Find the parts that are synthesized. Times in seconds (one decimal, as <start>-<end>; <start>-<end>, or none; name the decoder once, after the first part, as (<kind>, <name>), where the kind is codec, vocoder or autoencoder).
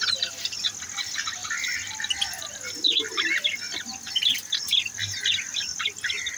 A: none